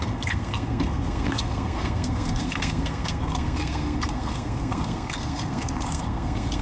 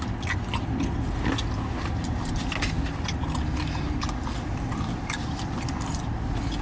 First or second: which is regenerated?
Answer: first